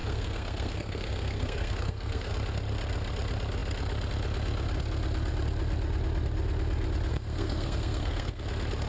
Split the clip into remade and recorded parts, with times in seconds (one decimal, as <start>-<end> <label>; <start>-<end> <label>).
0.0-2.3 remade; 2.3-7.1 recorded; 7.1-8.4 remade; 8.4-8.9 recorded

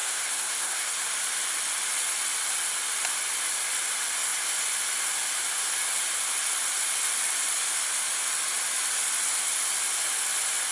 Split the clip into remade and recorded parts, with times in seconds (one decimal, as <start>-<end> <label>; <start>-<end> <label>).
0.0-1.1 remade; 1.1-10.7 recorded